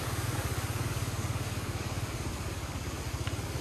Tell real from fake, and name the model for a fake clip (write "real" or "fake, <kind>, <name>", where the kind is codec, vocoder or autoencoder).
fake, codec, DAC